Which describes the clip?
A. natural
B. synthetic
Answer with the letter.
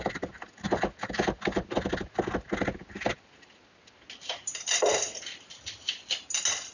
A